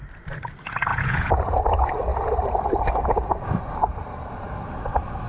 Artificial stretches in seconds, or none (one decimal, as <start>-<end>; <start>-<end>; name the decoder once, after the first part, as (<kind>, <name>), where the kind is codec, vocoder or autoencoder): 0.9-1.6 (vocoder, Vocos)